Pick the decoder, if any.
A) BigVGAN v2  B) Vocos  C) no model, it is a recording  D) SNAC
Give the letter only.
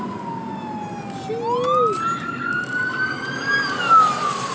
C